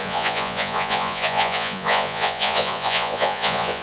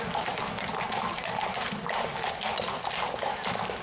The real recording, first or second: second